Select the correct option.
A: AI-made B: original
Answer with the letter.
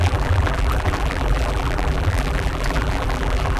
A